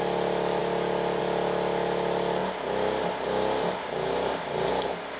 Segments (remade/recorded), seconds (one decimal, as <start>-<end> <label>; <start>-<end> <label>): 0.0-0.6 remade; 0.6-1.2 recorded; 1.2-2.4 remade; 2.4-4.7 recorded; 4.7-5.2 remade